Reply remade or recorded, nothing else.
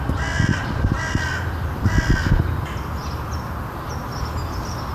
recorded